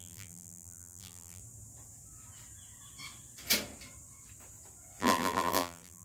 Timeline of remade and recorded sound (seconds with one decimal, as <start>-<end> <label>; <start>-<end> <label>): 0.0-1.4 remade; 1.4-5.0 recorded; 5.0-6.0 remade